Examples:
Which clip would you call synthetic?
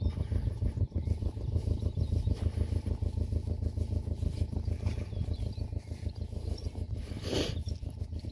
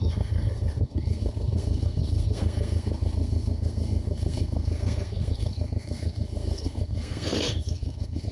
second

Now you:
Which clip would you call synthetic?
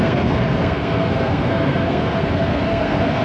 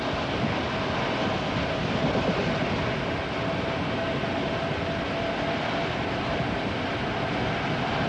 first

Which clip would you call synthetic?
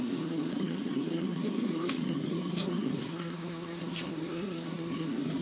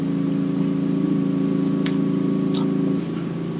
first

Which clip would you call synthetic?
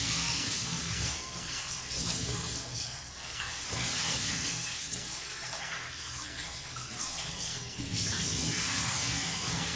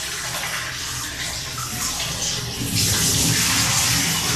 first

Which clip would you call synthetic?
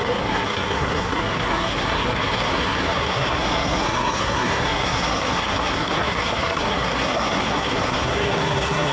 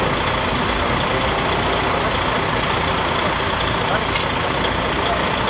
first